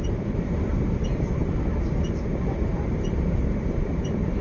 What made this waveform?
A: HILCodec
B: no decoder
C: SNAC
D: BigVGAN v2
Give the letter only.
D